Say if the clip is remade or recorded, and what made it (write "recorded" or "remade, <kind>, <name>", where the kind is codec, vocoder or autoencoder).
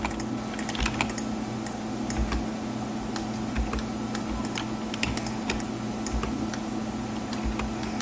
recorded